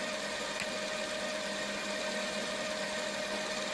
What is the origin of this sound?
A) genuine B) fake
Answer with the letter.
A